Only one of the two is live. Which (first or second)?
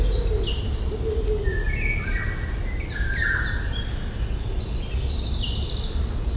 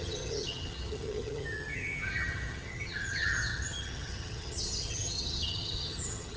first